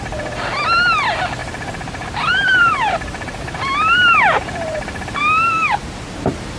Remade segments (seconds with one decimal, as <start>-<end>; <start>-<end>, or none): 1.4-5.2; 5.8-6.6